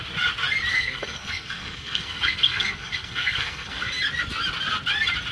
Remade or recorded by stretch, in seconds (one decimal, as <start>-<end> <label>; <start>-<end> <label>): 0.0-0.7 recorded; 0.7-3.9 remade; 3.9-5.3 recorded